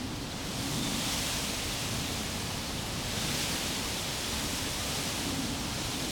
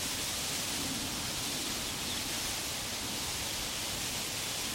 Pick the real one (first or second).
first